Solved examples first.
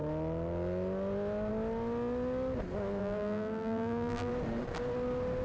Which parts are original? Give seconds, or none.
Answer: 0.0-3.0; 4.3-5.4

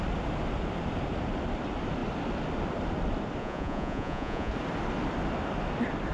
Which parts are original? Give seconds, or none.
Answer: 0.0-3.4; 4.5-6.1

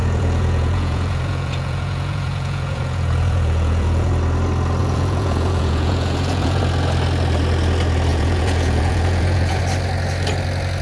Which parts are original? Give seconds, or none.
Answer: 4.1-4.8; 6.6-8.1; 9.6-10.8

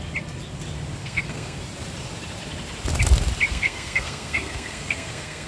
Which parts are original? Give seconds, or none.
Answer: 0.0-1.0; 1.6-3.5

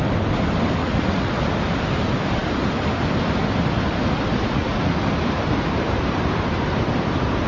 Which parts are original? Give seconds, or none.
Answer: 0.0-0.8; 1.3-4.4; 4.9-7.5